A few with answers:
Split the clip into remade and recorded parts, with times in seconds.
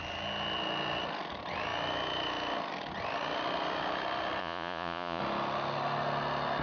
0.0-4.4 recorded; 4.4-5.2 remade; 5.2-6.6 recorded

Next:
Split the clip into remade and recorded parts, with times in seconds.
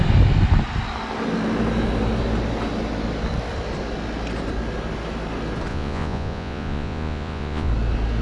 0.0-5.7 recorded; 5.7-7.7 remade; 7.7-8.2 recorded